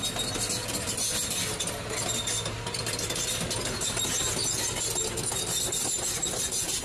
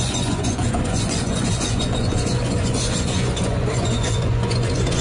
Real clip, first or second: first